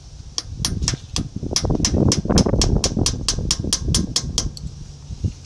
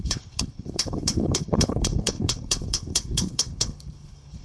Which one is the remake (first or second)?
second